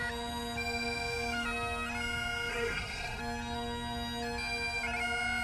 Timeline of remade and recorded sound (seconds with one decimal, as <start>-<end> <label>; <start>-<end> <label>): 0.0-2.5 recorded; 2.5-3.2 remade; 3.2-5.4 recorded